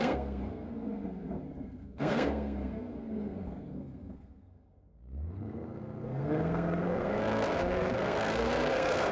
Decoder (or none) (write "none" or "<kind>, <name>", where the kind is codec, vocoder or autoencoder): codec, SNAC